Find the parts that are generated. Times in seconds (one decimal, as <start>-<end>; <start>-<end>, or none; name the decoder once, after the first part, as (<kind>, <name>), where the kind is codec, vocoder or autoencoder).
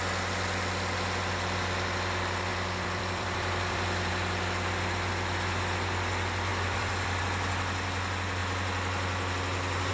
2.5-4.1 (vocoder, BigVGAN v2); 6.5-7.2